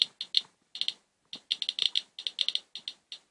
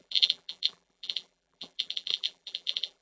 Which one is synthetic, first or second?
second